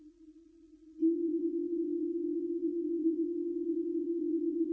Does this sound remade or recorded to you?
remade